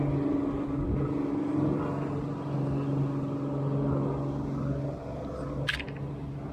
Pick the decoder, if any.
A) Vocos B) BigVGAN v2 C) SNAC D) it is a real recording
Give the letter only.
D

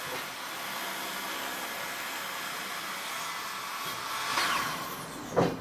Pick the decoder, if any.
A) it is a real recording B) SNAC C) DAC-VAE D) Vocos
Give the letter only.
A